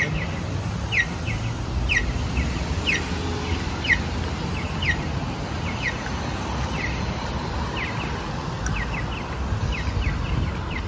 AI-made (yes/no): no